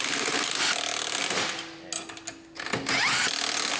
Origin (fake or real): real